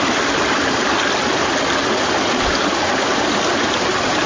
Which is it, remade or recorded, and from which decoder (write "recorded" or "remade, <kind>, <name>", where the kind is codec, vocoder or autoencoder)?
recorded